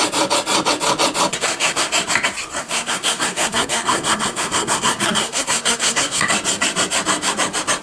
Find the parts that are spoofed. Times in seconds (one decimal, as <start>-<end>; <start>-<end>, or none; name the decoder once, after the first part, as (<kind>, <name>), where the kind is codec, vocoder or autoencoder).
1.3-1.9 (codec, SNAC); 2.6-6.3